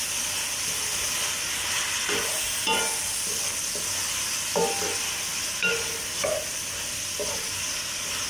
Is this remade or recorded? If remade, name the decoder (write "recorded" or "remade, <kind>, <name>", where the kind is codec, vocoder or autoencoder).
recorded